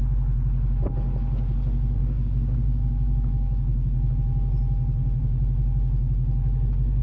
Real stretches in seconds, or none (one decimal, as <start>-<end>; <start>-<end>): 0.0-2.0; 4.1-7.0